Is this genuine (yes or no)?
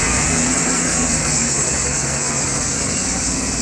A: no